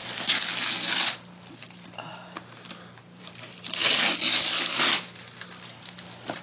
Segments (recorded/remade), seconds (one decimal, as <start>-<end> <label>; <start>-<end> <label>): 0.0-6.4 recorded